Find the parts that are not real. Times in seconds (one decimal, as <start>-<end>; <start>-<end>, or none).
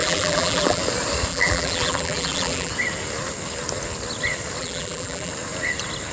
0.0-0.8; 1.3-2.7; 4.6-5.3